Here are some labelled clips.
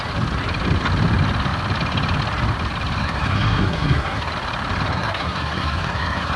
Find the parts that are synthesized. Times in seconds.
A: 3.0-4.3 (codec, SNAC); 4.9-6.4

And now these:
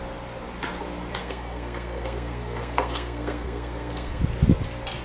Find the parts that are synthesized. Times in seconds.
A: 1.2-4.2 (codec, SNAC)

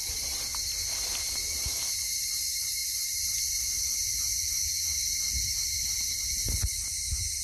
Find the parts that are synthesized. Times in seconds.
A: none

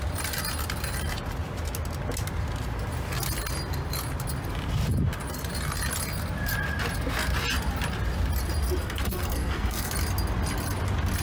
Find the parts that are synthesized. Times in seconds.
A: 8.8-9.9 (codec, SNAC)

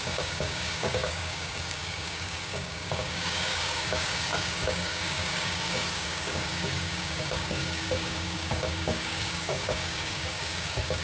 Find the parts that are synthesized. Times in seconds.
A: 0.0-11.0 (codec, DAC)

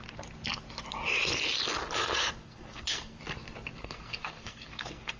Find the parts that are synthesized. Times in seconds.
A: 2.4-3.2 (codec, SNAC); 3.8-5.2